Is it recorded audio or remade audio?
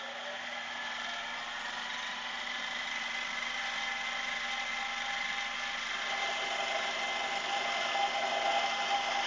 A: recorded